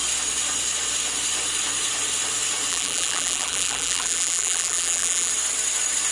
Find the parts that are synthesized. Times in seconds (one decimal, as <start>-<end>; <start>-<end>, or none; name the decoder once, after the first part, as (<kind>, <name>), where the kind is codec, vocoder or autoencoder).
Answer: 2.7-5.3 (vocoder, BigVGAN v2)